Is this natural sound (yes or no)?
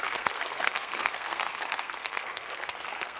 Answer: no